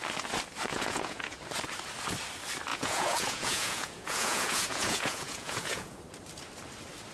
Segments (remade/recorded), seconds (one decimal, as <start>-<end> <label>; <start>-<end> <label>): 0.0-0.7 recorded; 0.7-1.4 remade; 1.4-2.7 recorded; 2.7-6.0 remade; 6.0-7.1 recorded